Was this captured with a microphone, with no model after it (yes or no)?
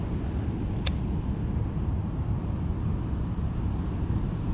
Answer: yes